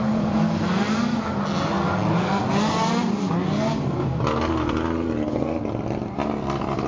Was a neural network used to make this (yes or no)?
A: no